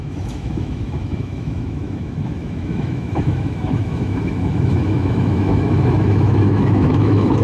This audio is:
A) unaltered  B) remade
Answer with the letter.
B